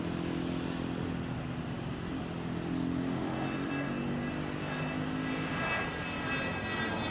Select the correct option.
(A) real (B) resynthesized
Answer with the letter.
A